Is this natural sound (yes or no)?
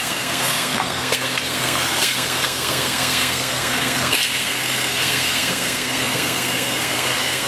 no